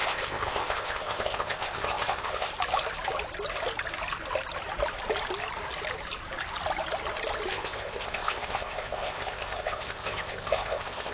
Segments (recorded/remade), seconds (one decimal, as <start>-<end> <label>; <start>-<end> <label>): 0.0-2.5 remade; 2.5-7.5 recorded; 7.5-11.1 remade